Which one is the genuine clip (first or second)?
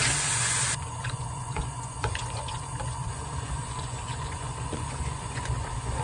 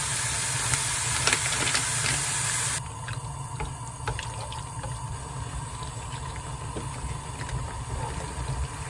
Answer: second